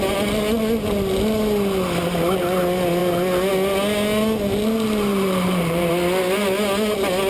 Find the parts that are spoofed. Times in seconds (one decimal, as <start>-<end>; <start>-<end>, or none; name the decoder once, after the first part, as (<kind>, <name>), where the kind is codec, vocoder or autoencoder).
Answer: 5.1-5.9 (vocoder, BigVGAN v2)